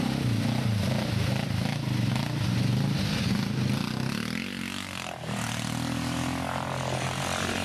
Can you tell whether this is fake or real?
real